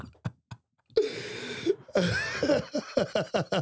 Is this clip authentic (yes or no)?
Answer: yes